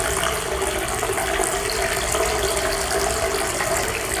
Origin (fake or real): real